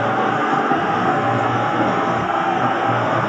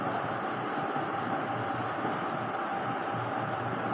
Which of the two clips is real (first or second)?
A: second